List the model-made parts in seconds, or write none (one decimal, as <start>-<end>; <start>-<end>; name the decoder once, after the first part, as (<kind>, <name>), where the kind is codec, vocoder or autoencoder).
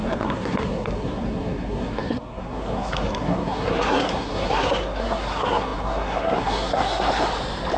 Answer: 0.0-7.3 (codec, SNAC)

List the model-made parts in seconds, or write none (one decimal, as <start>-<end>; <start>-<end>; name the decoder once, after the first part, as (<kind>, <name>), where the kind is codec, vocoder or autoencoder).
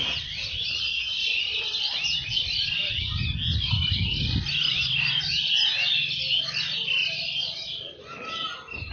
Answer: none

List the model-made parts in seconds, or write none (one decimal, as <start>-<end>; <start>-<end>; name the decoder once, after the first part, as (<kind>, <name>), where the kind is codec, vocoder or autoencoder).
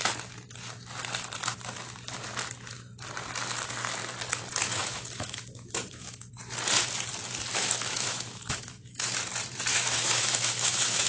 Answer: 4.6-6.3 (autoencoder, DAC-VAE); 7.5-9.1; 9.7-11.1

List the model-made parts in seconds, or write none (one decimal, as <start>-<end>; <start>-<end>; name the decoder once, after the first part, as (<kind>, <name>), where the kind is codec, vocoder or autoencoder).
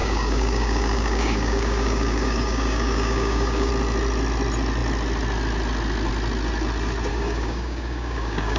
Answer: 0.0-3.7 (codec, DAC); 7.1-8.6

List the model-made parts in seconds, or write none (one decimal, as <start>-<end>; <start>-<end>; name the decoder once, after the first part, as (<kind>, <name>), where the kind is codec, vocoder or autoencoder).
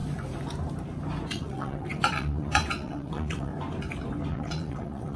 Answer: 1.3-3.5 (vocoder, WaveNeXt); 4.3-5.2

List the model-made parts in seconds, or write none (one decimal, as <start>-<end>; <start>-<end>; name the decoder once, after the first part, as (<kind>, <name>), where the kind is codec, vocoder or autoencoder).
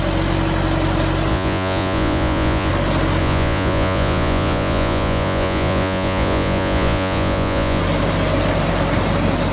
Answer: 1.3-2.7 (vocoder, Vocos); 3.2-7.8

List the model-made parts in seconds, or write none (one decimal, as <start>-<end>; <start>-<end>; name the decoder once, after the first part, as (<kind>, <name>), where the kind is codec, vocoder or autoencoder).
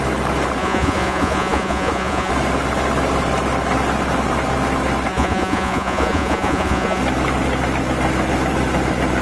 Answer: 0.6-2.3 (vocoder, Vocos); 5.1-7.0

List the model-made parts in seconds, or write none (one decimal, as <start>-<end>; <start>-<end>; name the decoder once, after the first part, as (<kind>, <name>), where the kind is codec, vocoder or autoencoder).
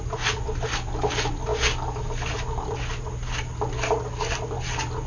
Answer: none